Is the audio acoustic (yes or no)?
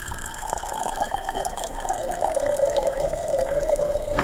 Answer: no